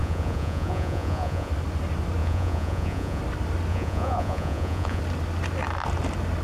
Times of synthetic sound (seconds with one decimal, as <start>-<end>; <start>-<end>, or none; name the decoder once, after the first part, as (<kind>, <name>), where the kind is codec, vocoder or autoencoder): 0.0-1.5 (vocoder, Vocos); 2.2-3.2; 3.7-5.0